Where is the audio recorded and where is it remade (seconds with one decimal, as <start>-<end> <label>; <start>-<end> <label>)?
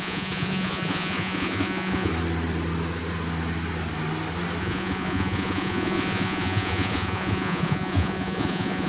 0.0-2.1 remade; 2.1-4.6 recorded; 4.6-8.9 remade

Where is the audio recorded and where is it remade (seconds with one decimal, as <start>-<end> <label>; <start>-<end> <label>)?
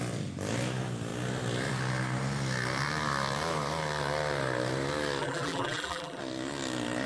0.0-5.2 recorded; 5.2-6.2 remade; 6.2-7.1 recorded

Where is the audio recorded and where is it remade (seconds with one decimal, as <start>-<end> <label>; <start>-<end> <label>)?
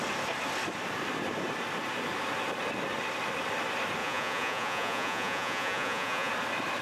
0.0-4.0 recorded; 4.0-6.3 remade; 6.3-6.8 recorded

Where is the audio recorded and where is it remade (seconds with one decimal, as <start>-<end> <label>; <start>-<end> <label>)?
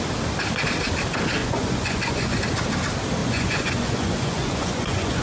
0.0-1.4 recorded; 1.4-2.4 remade; 2.4-3.2 recorded; 3.2-5.2 remade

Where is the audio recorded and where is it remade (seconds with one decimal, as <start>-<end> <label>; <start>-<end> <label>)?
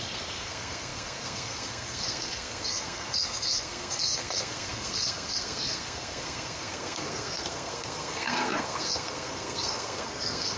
0.0-10.6 remade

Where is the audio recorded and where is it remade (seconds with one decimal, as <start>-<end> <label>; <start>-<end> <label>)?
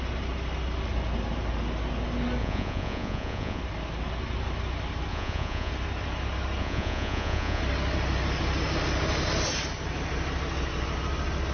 0.0-2.4 recorded; 2.4-3.6 remade; 3.6-5.1 recorded; 5.1-5.7 remade; 5.7-6.6 recorded; 6.6-7.6 remade; 7.6-11.5 recorded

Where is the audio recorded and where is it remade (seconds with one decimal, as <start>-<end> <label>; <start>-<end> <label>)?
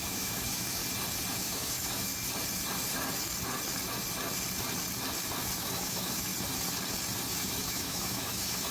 0.0-0.8 remade; 0.8-1.3 recorded; 1.3-2.1 remade; 2.1-5.6 recorded; 5.6-6.3 remade; 6.3-7.3 recorded; 7.3-8.7 remade